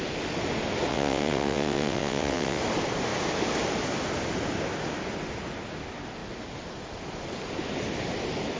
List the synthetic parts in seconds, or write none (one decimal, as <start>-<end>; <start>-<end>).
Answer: 0.9-2.6